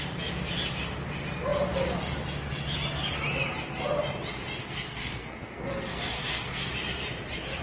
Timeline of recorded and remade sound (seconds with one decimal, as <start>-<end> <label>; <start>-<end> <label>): 0.0-4.6 recorded; 4.6-6.7 remade; 6.7-7.6 recorded